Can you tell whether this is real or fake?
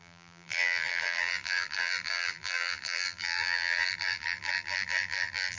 fake